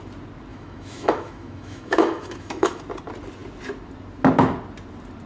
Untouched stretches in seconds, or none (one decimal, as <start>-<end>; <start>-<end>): 0.0-0.5; 2.8-5.3